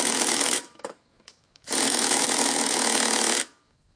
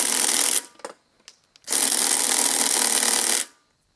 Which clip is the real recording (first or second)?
second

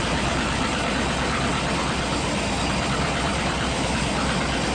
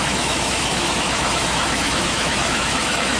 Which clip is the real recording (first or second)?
first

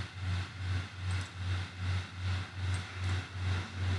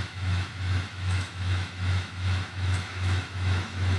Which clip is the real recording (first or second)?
first